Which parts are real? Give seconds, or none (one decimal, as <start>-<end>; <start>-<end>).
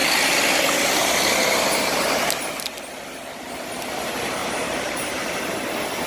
0.0-4.4; 5.4-6.1